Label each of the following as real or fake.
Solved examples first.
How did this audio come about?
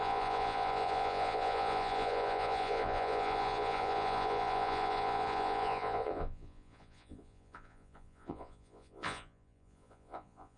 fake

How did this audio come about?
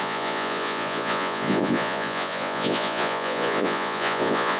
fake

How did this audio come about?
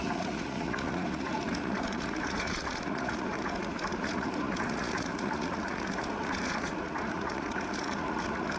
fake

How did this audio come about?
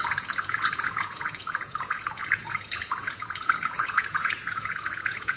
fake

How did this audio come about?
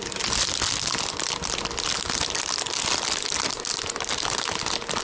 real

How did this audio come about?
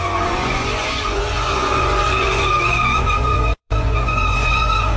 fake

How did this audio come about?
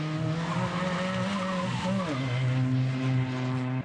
real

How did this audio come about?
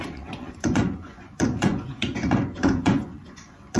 fake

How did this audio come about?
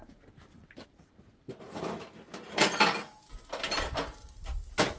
real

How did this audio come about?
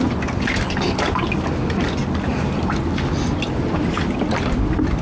real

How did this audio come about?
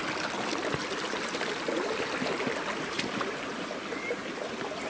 real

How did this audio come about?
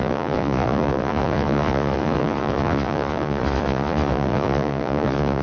fake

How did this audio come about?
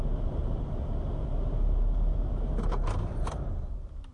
real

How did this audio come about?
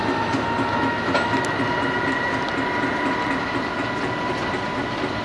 real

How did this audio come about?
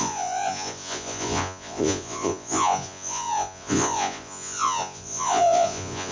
fake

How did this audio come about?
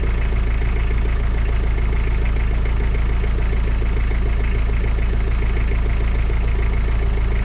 real